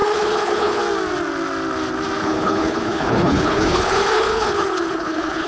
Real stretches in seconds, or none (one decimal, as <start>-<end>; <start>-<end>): 0.8-2.2